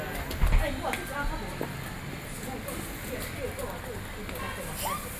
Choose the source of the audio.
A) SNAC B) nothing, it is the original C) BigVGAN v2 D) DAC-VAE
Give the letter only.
B